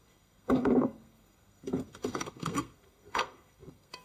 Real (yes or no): no